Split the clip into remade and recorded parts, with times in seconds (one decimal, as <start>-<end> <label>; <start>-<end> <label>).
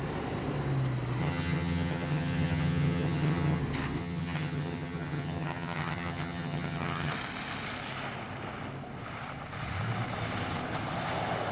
0.0-1.2 recorded; 1.2-3.6 remade; 3.6-4.0 recorded; 4.0-7.1 remade; 7.1-11.5 recorded